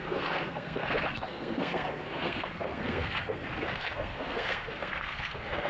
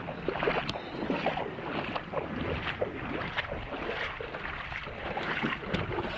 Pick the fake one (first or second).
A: first